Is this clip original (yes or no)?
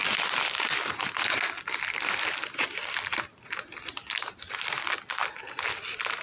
yes